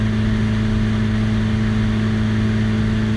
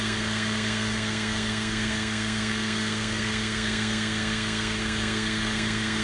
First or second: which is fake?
second